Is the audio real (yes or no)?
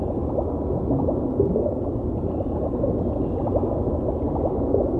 yes